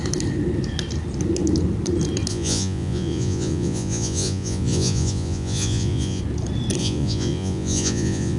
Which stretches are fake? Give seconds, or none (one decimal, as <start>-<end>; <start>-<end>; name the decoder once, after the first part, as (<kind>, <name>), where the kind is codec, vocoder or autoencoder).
2.3-6.2 (vocoder, Vocos); 6.8-8.4